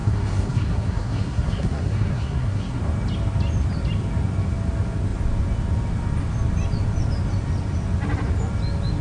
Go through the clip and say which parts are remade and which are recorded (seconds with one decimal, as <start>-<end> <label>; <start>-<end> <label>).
0.0-2.8 remade; 2.8-9.0 recorded